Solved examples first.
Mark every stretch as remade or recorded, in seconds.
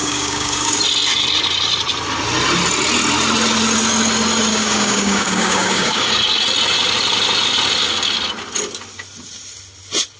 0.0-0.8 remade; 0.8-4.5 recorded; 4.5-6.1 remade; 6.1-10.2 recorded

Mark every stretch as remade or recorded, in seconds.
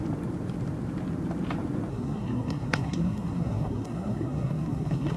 0.0-1.9 recorded; 1.9-5.2 remade